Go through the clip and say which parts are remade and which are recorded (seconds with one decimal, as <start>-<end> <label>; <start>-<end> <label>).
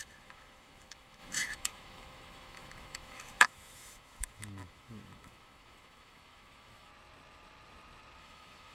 0.0-6.9 remade; 6.9-8.2 recorded; 8.2-8.7 remade